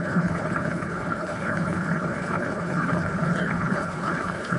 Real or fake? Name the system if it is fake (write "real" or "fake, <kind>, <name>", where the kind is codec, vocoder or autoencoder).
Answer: fake, codec, HILCodec